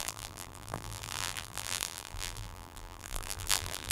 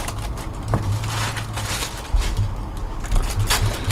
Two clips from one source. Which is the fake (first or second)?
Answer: first